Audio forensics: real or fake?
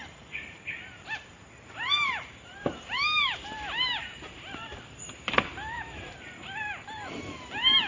fake